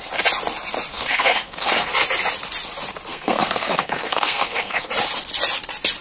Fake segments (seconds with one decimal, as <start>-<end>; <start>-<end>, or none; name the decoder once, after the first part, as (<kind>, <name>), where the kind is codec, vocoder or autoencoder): 0.9-1.9 (codec, SNAC); 3.1-4.9